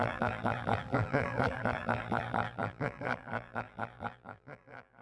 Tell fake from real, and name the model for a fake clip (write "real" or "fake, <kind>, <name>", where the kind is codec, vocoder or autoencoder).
fake, vocoder, BigVGAN v2